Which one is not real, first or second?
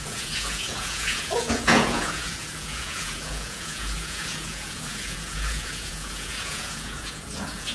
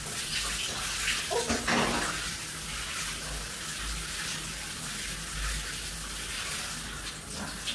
first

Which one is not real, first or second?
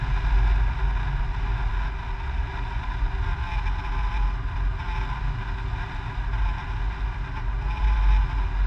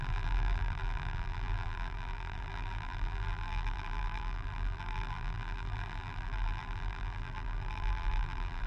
second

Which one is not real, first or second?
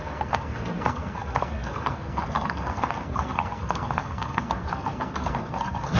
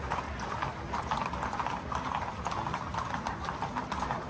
first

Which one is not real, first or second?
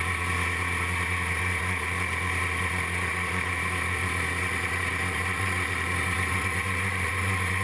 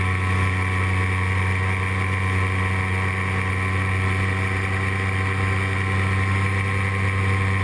first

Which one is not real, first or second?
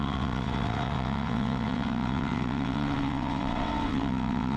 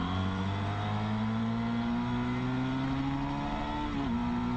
first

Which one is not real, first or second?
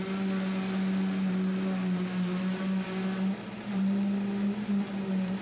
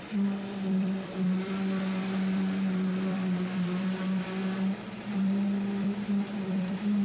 second